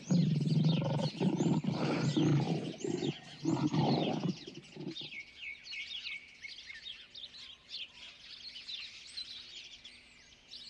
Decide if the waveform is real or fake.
real